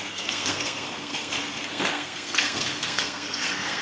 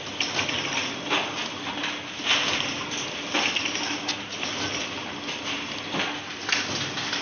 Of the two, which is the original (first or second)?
second